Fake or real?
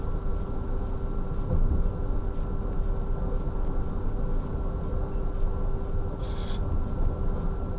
real